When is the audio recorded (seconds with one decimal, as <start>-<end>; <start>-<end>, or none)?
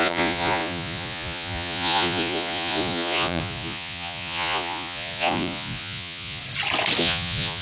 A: 6.4-7.0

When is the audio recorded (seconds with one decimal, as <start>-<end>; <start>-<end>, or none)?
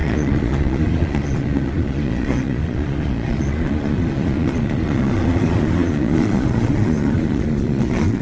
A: none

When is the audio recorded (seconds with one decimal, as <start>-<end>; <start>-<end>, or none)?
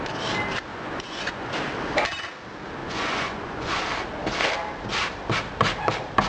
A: 0.0-0.7; 1.5-2.8; 3.8-6.3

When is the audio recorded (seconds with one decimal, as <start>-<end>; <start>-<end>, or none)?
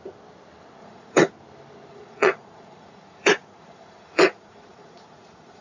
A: 0.0-0.8; 1.3-1.9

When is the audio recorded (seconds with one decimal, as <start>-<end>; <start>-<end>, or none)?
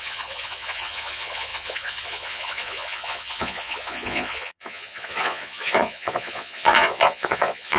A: none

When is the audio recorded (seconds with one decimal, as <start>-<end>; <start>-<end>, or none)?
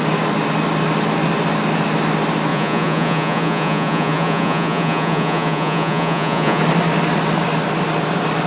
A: 0.0-2.5; 6.6-8.5